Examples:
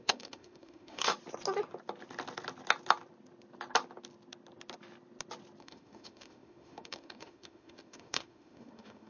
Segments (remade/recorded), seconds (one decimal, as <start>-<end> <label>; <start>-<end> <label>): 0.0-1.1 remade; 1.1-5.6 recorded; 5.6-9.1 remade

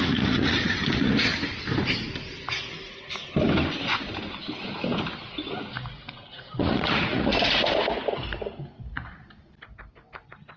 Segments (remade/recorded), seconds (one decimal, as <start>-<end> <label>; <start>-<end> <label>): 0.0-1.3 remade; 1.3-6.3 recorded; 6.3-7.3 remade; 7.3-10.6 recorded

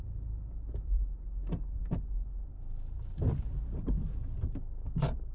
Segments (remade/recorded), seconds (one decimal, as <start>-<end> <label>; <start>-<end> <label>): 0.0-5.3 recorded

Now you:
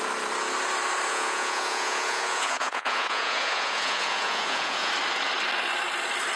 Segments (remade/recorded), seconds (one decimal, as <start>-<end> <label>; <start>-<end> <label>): 0.0-1.1 recorded; 1.1-4.9 remade; 4.9-6.4 recorded

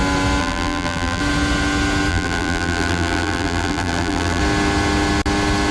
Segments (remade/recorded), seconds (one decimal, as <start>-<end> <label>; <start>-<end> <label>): 0.0-0.4 recorded; 0.4-1.2 remade; 1.2-2.1 recorded; 2.1-4.4 remade; 4.4-5.7 recorded

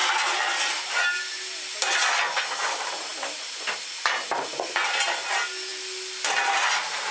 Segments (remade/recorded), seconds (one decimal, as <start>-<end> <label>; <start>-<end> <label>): 0.0-7.1 recorded